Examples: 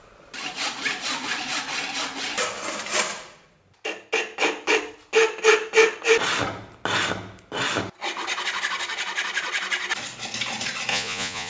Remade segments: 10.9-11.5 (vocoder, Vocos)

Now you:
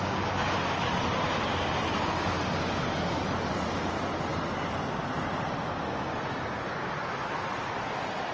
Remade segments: 4.3-7.8 (vocoder, BigVGAN v2)

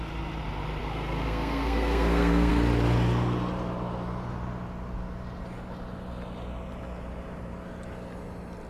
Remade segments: 0.8-2.5 (codec, SNAC)

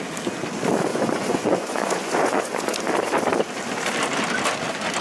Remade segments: 0.9-2.7 (vocoder, Vocos)

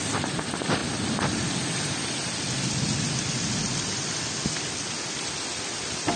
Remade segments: 0.0-6.2 (vocoder, BigVGAN v2)

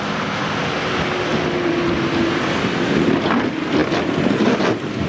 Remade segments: 1.3-3.2 (vocoder, BigVGAN v2)